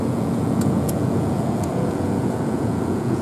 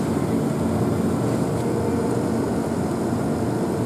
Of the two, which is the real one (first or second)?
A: second